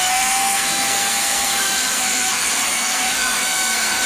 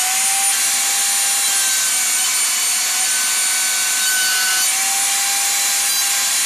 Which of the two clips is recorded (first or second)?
second